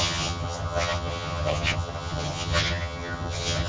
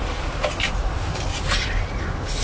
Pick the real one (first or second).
second